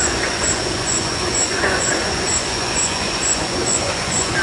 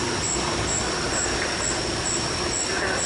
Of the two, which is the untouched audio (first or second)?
second